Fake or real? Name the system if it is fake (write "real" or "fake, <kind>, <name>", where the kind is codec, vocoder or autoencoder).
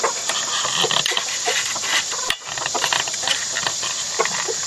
fake, vocoder, BigVGAN v2